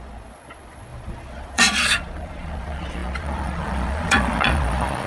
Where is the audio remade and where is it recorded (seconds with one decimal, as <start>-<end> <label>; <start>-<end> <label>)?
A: 0.0-5.1 remade